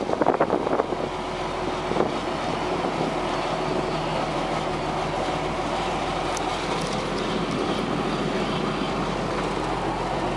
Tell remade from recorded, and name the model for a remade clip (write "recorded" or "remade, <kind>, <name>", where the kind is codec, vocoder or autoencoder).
recorded